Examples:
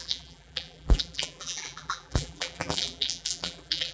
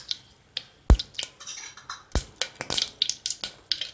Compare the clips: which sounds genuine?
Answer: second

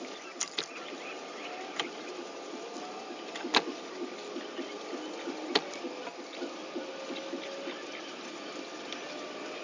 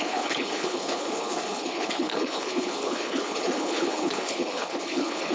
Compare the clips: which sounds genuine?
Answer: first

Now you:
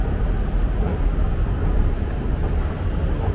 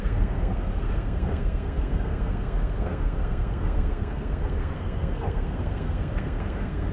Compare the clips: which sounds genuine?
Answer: first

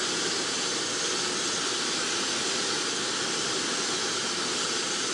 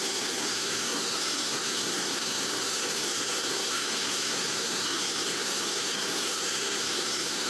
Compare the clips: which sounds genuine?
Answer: first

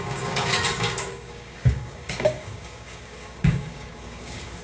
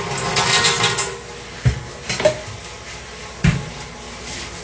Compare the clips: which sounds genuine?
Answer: second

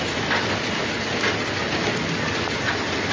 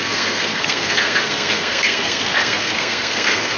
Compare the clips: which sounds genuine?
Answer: first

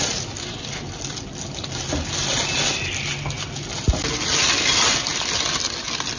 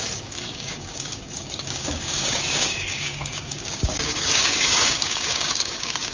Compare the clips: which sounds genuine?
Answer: first